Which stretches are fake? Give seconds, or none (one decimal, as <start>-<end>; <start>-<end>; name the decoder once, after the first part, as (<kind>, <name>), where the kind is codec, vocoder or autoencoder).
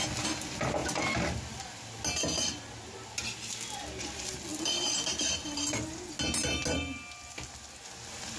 none